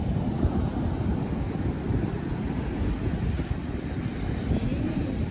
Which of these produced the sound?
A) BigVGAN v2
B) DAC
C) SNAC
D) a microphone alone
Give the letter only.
D